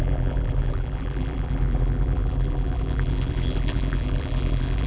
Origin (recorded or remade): remade